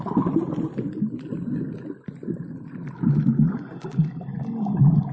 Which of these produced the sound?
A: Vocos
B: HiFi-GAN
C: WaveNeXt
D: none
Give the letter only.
D